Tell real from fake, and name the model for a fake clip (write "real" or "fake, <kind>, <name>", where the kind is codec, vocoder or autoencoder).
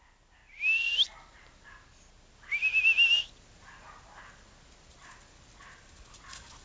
real